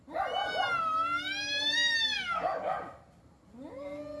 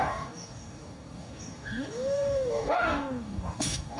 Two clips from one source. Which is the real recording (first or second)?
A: first